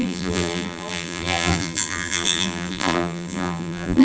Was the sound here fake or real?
fake